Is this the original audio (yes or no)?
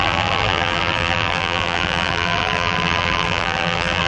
no